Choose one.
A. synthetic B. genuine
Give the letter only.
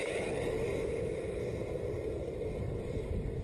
B